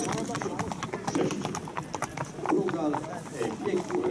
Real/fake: real